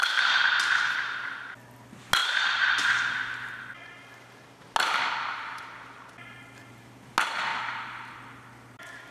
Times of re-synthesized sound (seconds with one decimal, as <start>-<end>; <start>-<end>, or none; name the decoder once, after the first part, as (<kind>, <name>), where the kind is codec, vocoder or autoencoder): none

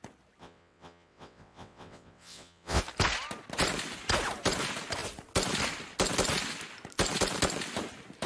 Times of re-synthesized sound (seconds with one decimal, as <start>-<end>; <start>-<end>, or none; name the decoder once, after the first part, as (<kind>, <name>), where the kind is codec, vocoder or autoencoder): 0.4-2.8 (vocoder, WaveNeXt)

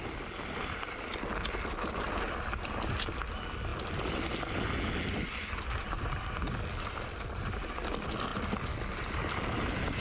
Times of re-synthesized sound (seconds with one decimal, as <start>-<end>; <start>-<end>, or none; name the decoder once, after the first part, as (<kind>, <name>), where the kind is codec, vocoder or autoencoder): none

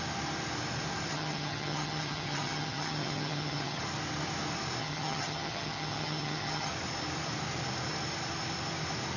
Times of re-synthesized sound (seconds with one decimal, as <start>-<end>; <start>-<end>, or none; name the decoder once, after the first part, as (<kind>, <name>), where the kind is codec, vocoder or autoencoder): 1.1-3.8 (vocoder, HiFi-GAN); 4.8-6.7

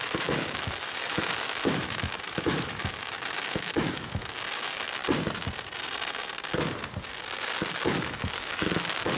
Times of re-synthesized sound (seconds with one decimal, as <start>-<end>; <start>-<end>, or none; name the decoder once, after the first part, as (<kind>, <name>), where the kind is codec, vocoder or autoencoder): 0.0-5.0 (autoencoder, DAC-VAE); 7.7-9.2

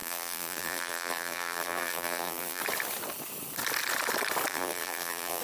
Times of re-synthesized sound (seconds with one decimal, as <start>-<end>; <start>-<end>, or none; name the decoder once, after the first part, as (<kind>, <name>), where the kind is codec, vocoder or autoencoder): 0.0-2.6 (vocoder, BigVGAN v2); 4.5-5.4

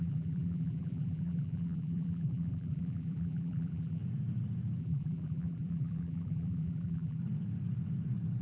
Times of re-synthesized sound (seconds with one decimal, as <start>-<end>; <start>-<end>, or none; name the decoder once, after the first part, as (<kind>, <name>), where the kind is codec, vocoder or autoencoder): 0.0-4.0 (vocoder, BigVGAN v2); 4.8-7.2